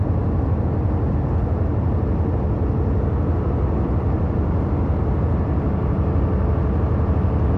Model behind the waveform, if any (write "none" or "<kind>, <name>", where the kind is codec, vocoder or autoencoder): none